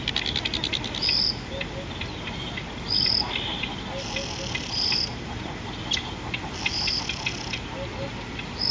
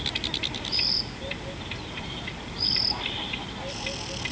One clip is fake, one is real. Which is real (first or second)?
first